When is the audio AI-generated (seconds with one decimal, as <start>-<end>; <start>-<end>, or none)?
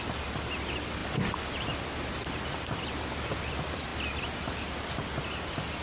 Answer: 0.0-1.0; 3.0-3.9; 4.5-5.8